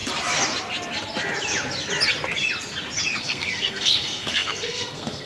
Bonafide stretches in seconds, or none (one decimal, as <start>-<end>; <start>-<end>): 0.0-3.2